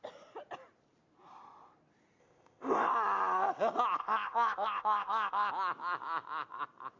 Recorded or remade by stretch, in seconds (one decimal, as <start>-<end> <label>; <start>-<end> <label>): 0.0-2.2 recorded; 2.2-2.9 remade; 2.9-4.0 recorded; 4.0-5.5 remade; 5.5-7.0 recorded